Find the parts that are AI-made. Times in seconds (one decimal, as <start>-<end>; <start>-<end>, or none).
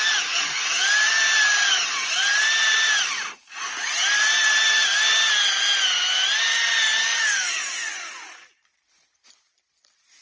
7.0-7.6